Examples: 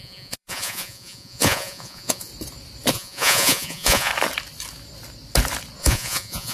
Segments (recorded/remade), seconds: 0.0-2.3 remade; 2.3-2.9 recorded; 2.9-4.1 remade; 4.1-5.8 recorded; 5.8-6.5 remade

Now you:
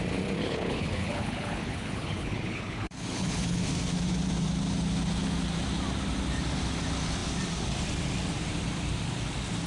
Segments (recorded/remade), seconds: 0.0-0.4 recorded; 0.4-3.6 remade; 3.6-9.7 recorded